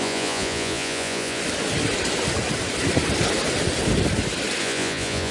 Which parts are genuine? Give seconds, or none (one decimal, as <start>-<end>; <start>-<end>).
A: 1.4-4.6